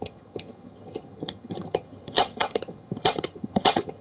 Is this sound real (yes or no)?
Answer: no